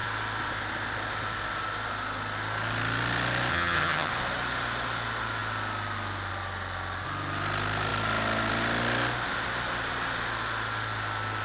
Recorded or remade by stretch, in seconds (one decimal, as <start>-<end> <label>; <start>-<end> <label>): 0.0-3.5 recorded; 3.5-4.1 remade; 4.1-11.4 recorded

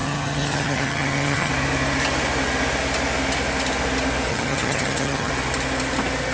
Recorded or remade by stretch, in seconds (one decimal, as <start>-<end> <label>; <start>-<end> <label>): 0.0-1.5 remade; 1.5-4.3 recorded; 4.3-5.3 remade; 5.3-6.3 recorded

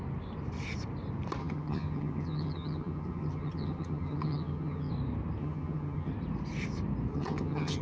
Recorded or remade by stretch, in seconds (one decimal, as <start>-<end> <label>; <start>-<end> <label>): 0.0-1.4 recorded; 1.4-4.9 remade; 4.9-5.4 recorded; 5.4-6.1 remade; 6.1-7.1 recorded; 7.1-7.8 remade

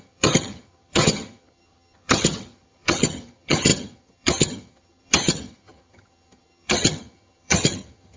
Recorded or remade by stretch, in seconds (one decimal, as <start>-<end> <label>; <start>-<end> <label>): 0.0-8.2 remade

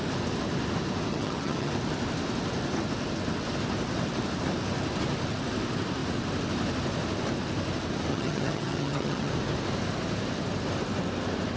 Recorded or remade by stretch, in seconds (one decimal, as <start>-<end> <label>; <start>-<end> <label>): 0.0-1.1 recorded; 1.1-1.7 remade; 1.7-8.1 recorded; 8.1-9.3 remade; 9.3-11.6 recorded

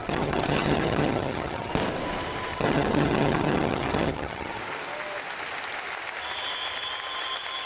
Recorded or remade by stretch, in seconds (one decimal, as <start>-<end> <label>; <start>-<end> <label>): 0.0-1.7 remade; 1.7-2.5 recorded; 2.5-4.6 remade; 4.6-7.7 recorded

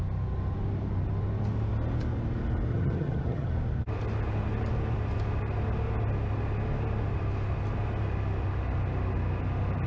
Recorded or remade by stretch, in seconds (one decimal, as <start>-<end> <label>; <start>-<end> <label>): 0.0-2.7 recorded; 2.7-3.5 remade; 3.5-9.9 recorded